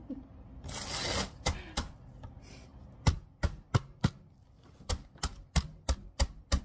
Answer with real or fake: real